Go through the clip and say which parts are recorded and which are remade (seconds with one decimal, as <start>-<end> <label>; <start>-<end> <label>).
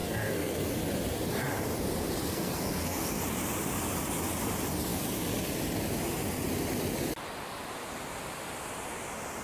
0.0-0.7 remade; 0.7-2.2 recorded; 2.2-3.2 remade; 3.2-9.4 recorded